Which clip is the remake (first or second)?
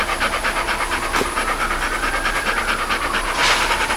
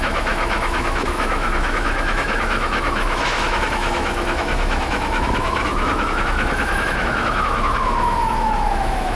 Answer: second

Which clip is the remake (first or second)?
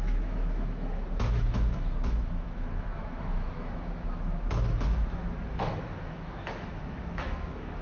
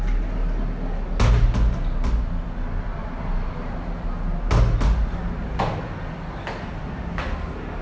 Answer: first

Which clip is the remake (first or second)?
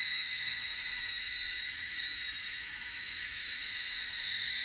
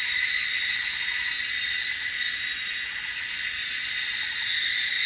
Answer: first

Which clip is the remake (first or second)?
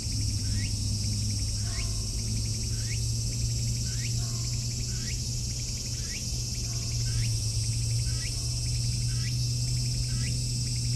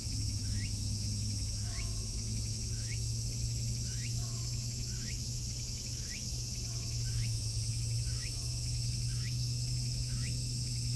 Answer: second